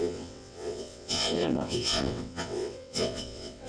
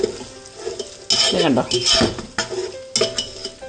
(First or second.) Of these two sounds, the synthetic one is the first